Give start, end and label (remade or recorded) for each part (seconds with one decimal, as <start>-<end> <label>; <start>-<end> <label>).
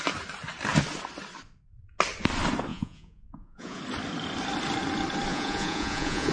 0.0-2.7 recorded; 2.7-3.8 remade; 3.8-5.3 recorded; 5.3-6.3 remade